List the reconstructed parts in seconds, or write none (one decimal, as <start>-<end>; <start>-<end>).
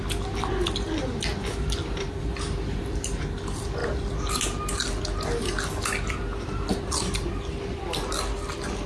1.8-3.2